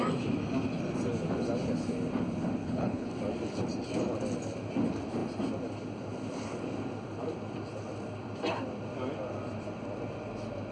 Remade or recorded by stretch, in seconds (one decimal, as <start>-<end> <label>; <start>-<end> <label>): 0.0-2.6 recorded; 2.6-3.1 remade; 3.1-10.7 recorded